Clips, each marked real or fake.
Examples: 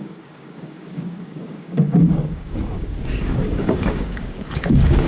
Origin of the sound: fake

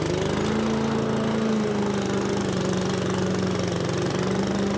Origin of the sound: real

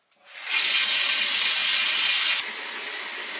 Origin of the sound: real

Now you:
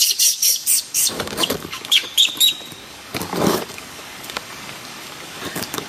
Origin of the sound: fake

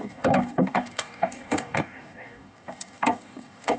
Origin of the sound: fake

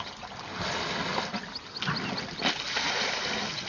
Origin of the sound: real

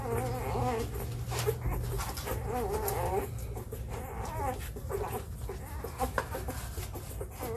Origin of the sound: real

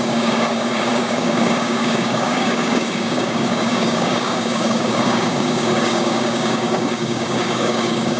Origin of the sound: fake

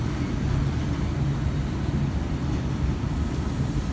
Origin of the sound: real